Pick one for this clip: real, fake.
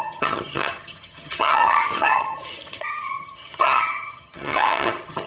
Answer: fake